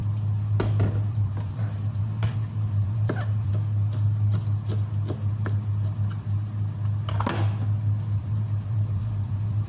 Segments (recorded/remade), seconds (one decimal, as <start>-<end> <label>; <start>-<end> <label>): 0.0-0.9 recorded; 0.9-3.5 remade; 3.5-8.2 recorded; 8.2-9.7 remade